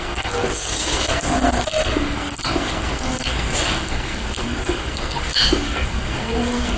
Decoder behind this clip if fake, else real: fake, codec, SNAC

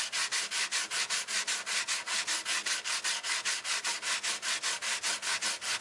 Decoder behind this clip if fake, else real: real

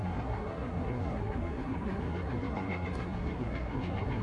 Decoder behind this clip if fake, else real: fake, codec, SNAC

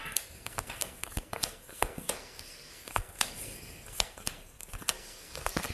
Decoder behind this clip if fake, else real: fake, codec, SNAC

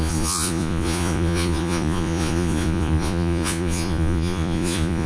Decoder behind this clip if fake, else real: fake, vocoder, Vocos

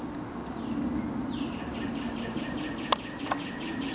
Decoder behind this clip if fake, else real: real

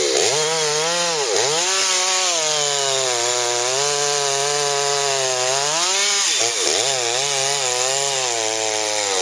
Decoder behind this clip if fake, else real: real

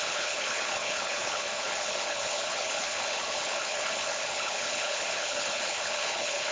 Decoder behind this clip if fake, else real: fake, codec, HILCodec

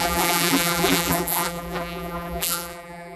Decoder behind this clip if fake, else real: fake, vocoder, BigVGAN v2